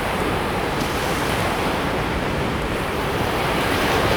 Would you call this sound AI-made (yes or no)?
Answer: yes